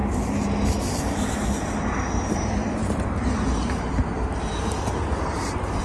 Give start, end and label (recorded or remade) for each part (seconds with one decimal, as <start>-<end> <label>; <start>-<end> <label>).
0.0-2.2 recorded; 2.2-2.8 remade; 2.8-5.8 recorded